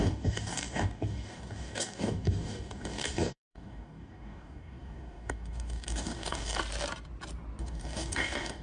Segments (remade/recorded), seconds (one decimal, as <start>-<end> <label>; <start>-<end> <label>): 0.0-6.6 remade; 6.6-7.6 recorded; 7.6-8.6 remade